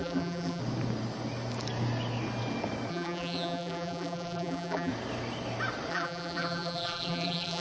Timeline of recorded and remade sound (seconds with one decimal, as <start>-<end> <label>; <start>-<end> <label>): 0.0-0.6 remade; 0.6-2.9 recorded; 2.9-4.9 remade; 4.9-5.9 recorded; 5.9-7.6 remade